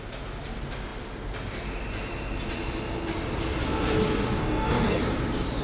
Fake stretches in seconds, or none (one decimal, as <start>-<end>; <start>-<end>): 4.4-5.0